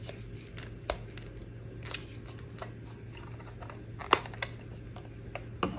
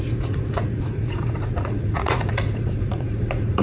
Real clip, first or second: first